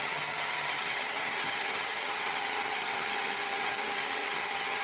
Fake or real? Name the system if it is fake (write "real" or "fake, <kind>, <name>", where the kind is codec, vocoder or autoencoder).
fake, vocoder, HiFi-GAN